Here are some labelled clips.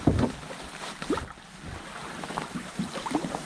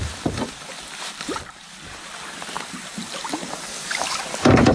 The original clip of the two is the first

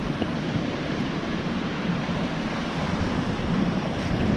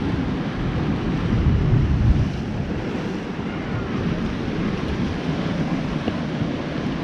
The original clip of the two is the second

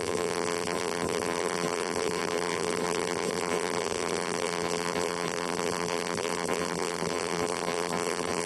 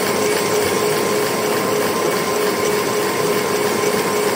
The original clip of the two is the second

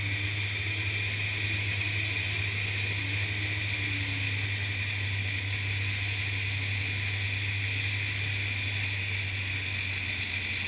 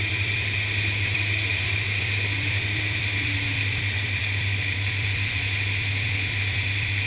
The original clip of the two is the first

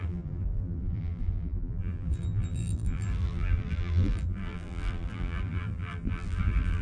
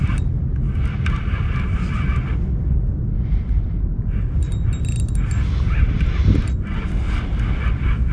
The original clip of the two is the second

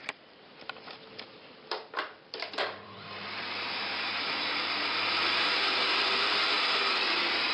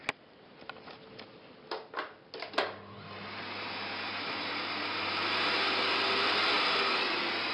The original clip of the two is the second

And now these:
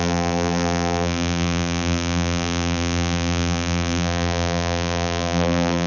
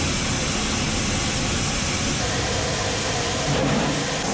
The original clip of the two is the second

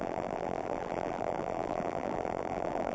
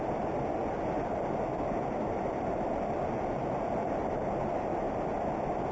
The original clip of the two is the second